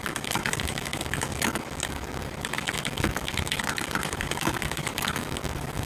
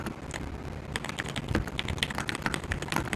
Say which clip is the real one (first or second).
second